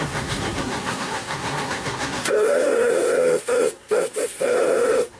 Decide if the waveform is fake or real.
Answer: fake